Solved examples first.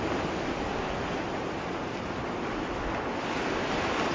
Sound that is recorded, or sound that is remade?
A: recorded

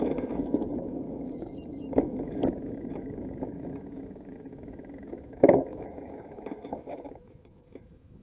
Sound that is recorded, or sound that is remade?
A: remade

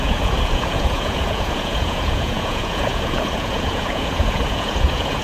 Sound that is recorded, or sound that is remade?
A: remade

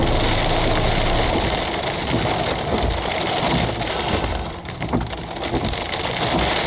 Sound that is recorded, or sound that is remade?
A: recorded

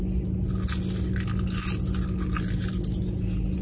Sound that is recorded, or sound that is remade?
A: recorded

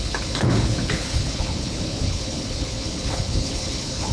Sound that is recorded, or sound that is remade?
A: remade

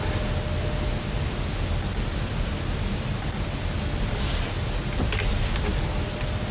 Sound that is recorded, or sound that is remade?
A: recorded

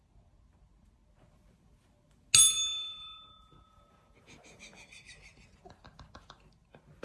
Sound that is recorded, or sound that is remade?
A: recorded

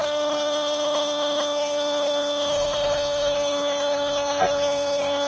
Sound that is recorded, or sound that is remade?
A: remade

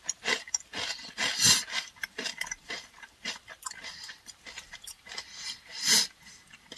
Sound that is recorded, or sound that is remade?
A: remade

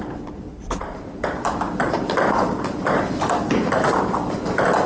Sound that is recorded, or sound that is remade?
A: remade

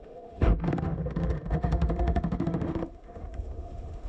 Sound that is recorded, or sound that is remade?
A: remade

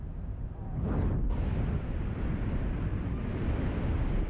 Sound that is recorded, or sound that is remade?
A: recorded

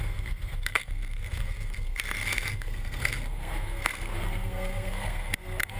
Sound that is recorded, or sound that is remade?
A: remade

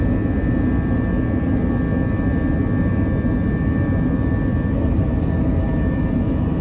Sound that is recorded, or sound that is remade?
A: recorded